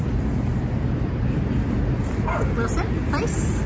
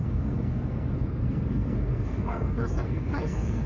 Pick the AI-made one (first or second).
second